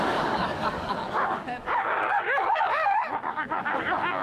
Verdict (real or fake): fake